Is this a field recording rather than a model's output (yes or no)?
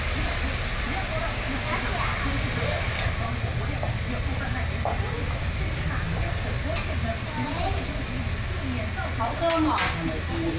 yes